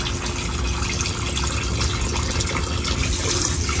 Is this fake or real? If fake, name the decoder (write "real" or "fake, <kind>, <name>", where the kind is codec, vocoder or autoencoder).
real